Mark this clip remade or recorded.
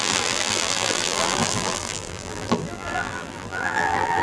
remade